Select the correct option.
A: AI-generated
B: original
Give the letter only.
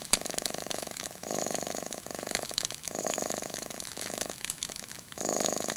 A